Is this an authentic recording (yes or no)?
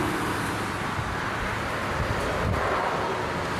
yes